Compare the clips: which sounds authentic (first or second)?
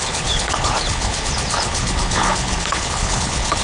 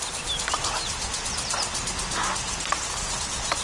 second